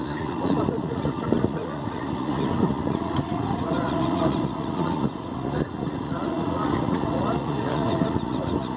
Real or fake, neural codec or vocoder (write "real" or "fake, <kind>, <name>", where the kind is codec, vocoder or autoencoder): fake, vocoder, Vocos